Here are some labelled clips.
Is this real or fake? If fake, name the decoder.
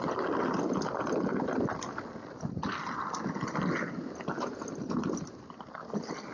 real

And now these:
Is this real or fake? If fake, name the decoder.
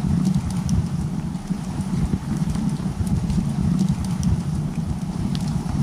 fake, vocoder, BigVGAN v2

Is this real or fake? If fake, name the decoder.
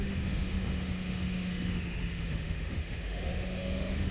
fake, autoencoder, DAC-VAE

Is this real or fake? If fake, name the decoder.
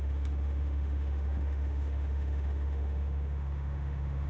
fake, autoencoder, DAC-VAE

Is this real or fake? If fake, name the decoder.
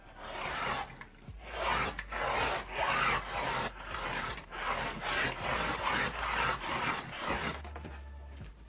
real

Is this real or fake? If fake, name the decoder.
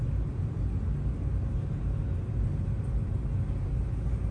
real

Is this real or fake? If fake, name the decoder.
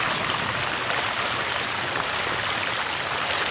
real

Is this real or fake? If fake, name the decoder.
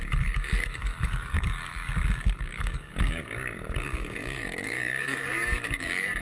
fake, codec, DAC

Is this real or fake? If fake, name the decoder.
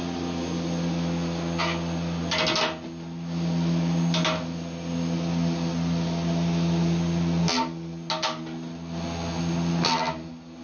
real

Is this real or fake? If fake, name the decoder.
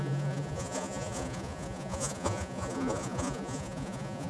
fake, vocoder, Vocos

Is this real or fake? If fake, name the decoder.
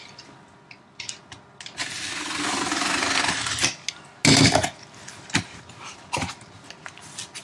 real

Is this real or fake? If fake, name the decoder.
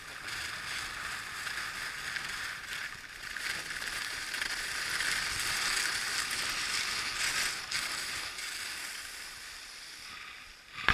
real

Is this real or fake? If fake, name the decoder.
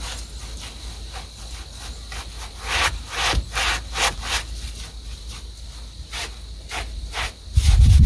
real